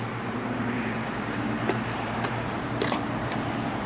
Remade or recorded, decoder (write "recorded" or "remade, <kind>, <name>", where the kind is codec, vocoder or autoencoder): remade, vocoder, BigVGAN v2